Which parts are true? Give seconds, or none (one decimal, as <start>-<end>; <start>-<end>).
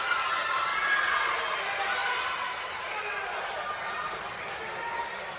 0.0-5.4